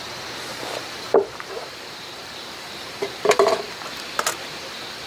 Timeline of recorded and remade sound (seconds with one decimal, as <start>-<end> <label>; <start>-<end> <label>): 0.0-0.5 recorded; 0.5-3.6 remade; 3.6-5.1 recorded